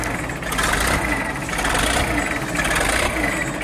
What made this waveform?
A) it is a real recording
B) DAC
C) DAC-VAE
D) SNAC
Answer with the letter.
A